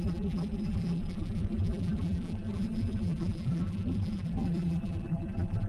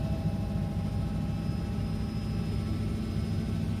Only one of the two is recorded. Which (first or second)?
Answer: second